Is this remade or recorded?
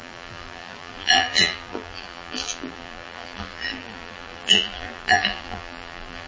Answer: remade